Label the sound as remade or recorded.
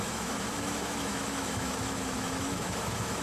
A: remade